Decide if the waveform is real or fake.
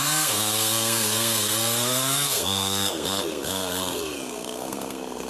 fake